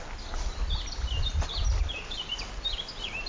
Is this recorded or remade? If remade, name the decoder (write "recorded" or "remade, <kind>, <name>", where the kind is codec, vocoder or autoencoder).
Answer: recorded